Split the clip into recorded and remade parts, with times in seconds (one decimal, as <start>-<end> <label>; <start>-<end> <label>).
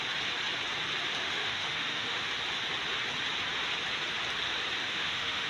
0.0-1.2 recorded; 1.2-2.3 remade; 2.3-4.8 recorded; 4.8-5.5 remade